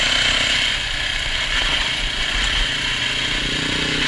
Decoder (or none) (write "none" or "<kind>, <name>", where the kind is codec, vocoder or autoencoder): vocoder, Vocos